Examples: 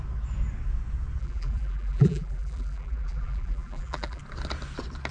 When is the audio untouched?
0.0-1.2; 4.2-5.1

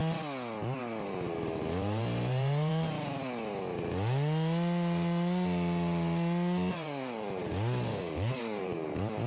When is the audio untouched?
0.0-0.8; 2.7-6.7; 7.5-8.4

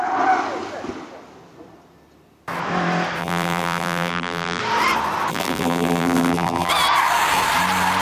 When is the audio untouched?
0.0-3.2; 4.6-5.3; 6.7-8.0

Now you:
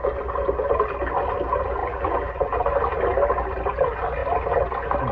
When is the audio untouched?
0.0-1.8; 2.7-5.1

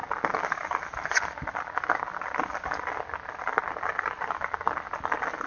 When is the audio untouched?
0.0-5.5

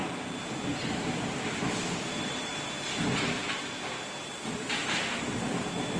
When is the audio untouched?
0.0-0.9; 5.0-6.0

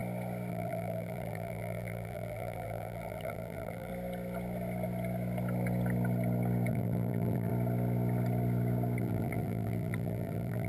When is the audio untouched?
0.0-0.5; 3.9-6.7; 7.5-9.0